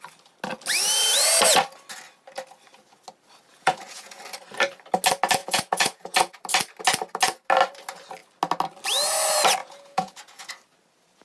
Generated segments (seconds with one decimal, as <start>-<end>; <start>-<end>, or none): 3.5-4.2; 5.4-6.4; 9.6-10.5